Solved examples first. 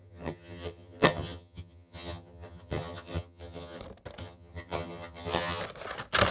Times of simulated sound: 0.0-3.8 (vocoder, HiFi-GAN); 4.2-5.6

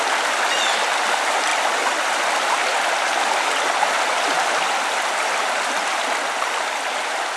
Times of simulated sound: none